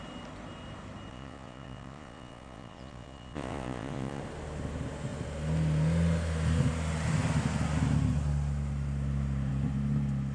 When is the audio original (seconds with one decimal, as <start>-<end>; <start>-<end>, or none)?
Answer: 0.0-1.1; 4.2-10.3